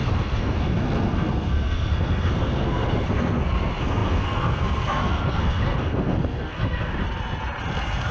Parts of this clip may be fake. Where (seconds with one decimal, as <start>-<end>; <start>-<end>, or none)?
0.0-7.0